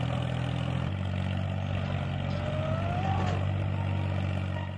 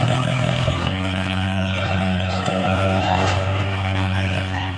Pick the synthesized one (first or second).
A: second